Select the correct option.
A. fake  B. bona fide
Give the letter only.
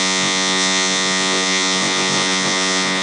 A